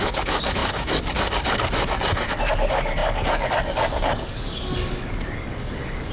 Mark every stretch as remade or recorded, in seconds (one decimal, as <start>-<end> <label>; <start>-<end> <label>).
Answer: 0.0-6.1 remade